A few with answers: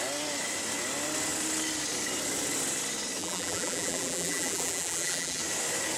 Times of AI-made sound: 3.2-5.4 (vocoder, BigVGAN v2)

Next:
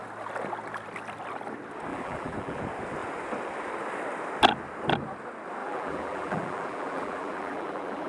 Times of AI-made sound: 1.9-2.6 (vocoder, BigVGAN v2); 5.6-8.1

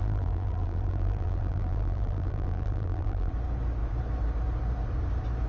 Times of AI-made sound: 0.0-3.3 (vocoder, BigVGAN v2)